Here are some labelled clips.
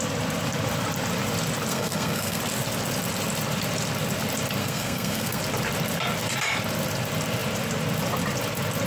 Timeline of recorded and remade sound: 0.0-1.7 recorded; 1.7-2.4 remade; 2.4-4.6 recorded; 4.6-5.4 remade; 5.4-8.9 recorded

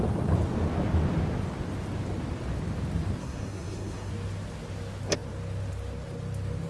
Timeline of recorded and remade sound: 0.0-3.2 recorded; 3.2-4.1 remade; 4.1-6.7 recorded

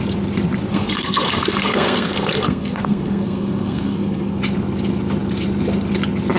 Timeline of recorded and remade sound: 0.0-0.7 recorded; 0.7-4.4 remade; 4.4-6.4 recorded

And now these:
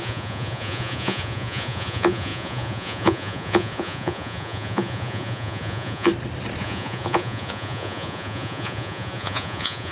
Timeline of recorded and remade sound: 0.0-6.1 remade; 6.1-6.6 recorded; 6.6-9.9 remade

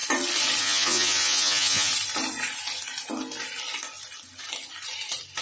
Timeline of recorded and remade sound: 0.0-0.6 recorded; 0.6-1.9 remade; 1.9-5.4 recorded

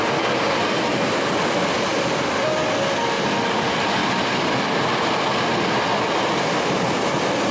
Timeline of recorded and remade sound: 0.0-7.5 recorded